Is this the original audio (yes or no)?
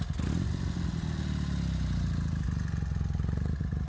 yes